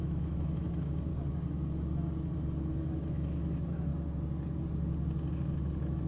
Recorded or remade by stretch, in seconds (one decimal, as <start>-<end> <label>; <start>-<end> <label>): 0.0-1.1 remade; 1.1-2.7 recorded; 2.7-3.9 remade; 3.9-5.3 recorded; 5.3-6.1 remade